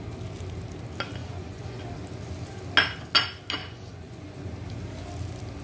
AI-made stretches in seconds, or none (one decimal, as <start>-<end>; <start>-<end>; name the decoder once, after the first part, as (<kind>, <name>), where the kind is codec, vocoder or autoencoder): 1.2-1.8 (vocoder, Vocos); 3.6-4.5